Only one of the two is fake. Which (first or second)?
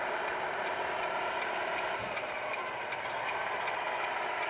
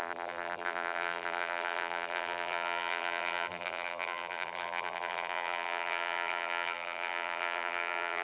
second